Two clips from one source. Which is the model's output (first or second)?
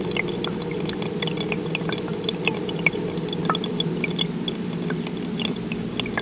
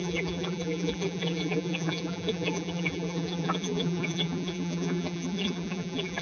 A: second